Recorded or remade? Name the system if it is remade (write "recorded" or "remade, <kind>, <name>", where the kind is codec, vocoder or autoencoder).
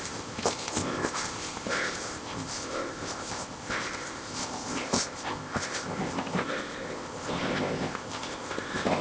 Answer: remade, codec, ZipCodec